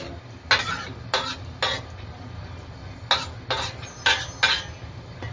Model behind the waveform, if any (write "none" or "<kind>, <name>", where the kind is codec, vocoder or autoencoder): none